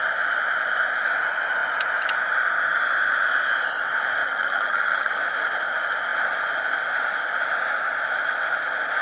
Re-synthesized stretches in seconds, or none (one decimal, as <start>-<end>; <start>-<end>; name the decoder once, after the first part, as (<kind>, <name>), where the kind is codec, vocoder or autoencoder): 4.2-5.1 (vocoder, HiFi-GAN)